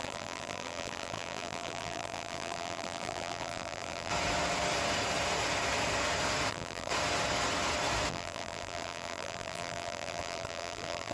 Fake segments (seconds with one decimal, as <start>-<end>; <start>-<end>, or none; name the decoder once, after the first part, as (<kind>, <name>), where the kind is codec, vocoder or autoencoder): 0.0-4.1 (vocoder, BigVGAN v2); 6.5-6.9; 8.1-11.1